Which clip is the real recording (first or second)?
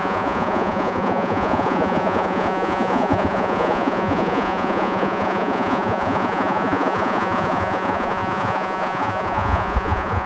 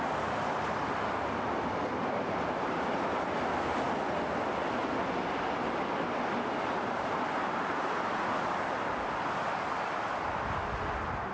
second